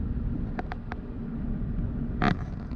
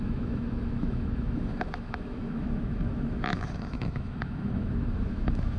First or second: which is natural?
first